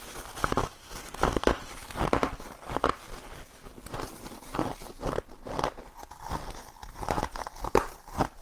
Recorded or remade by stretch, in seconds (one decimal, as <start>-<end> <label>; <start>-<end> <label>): 0.0-8.4 recorded